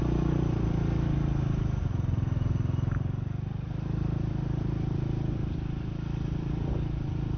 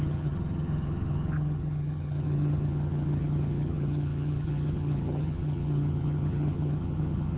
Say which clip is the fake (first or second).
second